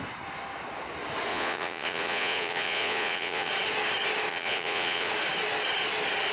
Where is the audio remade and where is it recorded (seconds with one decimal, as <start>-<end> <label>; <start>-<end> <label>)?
0.0-1.3 recorded; 1.3-3.5 remade; 3.5-4.3 recorded; 4.3-5.1 remade; 5.1-6.3 recorded